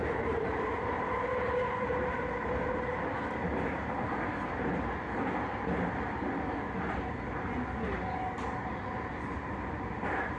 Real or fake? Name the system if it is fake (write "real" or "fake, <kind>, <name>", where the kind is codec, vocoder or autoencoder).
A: real